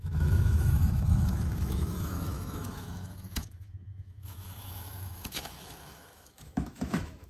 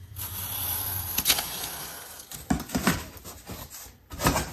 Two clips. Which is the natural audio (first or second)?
second